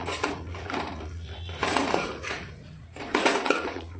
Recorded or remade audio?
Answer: remade